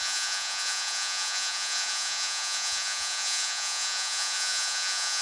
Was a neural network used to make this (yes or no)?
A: yes